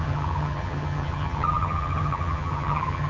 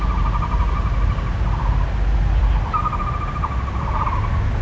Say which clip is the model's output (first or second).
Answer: first